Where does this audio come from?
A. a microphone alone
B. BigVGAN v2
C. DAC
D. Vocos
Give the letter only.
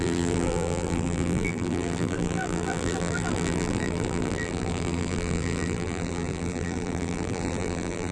B